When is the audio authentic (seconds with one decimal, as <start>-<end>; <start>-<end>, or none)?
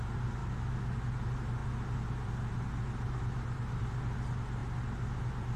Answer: 0.0-0.4; 1.0-5.6